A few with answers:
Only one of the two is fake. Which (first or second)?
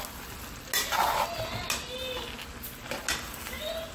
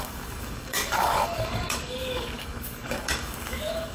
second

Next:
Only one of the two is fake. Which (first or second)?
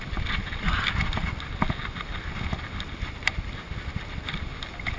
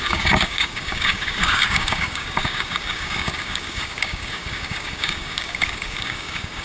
second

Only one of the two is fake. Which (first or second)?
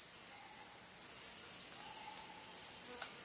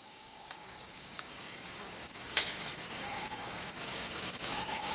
second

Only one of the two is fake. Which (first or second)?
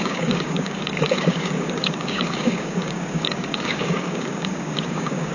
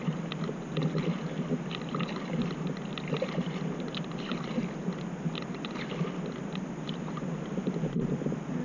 first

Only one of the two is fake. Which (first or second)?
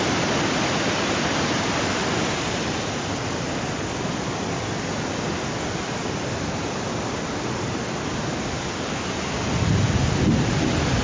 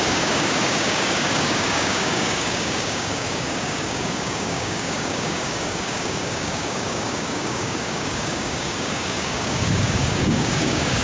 second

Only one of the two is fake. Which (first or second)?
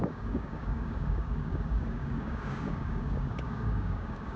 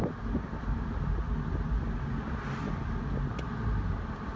first